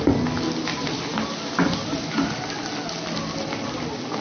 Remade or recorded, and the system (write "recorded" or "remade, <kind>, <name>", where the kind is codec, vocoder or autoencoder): recorded